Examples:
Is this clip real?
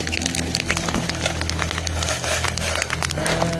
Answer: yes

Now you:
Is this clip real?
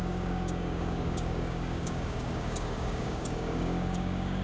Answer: no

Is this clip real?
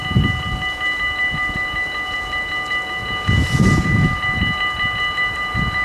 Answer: yes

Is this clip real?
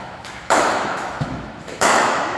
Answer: no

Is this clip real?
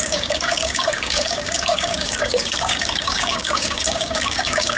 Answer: no